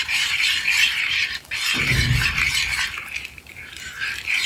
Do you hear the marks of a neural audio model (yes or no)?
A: yes